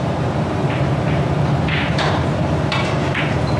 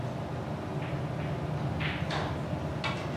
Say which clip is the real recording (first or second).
second